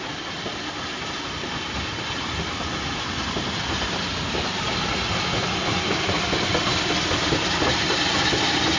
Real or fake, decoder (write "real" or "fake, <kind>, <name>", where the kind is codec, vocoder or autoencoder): real